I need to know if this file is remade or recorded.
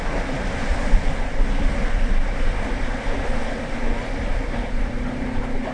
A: recorded